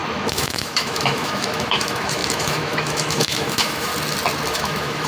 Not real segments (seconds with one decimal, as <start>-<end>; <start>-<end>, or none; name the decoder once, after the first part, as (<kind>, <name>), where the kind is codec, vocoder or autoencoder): 0.0-3.9 (autoencoder, DAC-VAE); 4.5-5.1